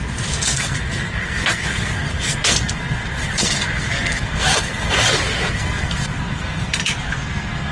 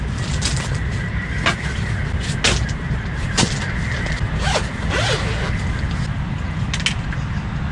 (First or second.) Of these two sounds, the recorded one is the second